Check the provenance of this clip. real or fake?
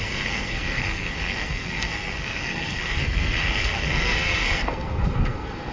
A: fake